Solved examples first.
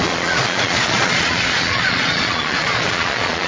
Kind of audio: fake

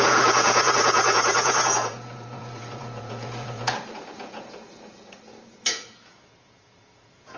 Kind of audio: fake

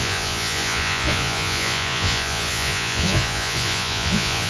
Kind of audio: fake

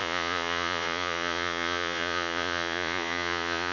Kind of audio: fake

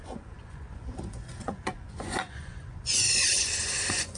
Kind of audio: fake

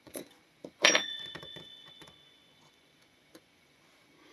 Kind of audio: fake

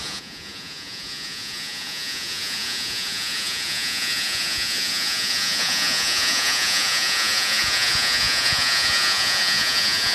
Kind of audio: fake